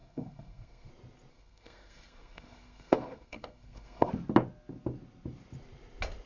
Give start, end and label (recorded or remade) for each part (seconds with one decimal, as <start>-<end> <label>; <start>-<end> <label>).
0.0-0.9 remade; 0.9-1.3 recorded; 1.3-4.1 remade; 4.1-6.3 recorded